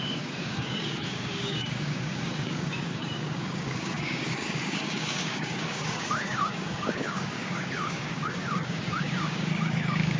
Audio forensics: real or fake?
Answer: fake